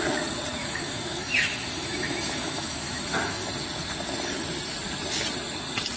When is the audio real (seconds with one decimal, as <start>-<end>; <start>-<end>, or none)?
0.0-0.6; 3.5-6.0